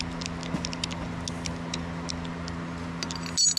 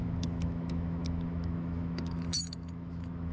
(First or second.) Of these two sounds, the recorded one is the first